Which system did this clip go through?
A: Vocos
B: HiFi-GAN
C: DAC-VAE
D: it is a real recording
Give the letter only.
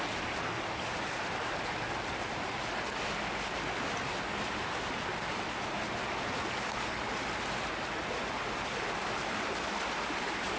D